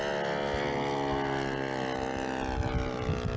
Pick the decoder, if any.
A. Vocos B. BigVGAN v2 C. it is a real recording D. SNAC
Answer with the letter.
C